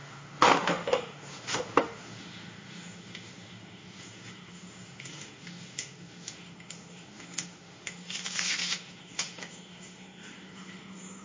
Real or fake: fake